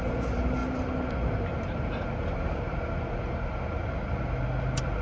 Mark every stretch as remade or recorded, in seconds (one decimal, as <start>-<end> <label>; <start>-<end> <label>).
0.0-5.0 recorded